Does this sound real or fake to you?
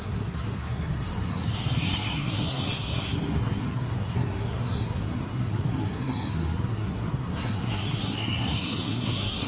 fake